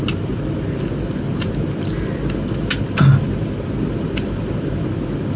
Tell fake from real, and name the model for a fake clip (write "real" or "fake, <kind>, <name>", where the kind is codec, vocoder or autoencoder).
real